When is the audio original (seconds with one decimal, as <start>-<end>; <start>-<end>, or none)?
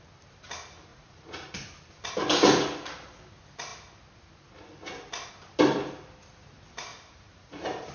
0.0-0.9; 1.5-6.9